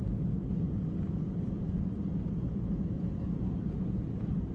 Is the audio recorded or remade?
recorded